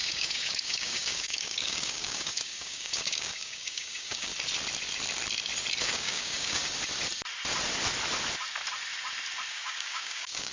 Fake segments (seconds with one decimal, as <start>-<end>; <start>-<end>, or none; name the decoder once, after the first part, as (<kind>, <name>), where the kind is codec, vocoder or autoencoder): 0.0-4.3 (codec, DAC); 5.8-6.6; 9.5-10.5